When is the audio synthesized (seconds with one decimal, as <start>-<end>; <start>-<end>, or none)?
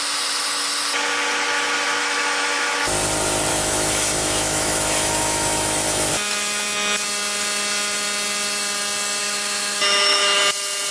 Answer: 2.0-2.8; 3.5-6.1; 9.2-10.4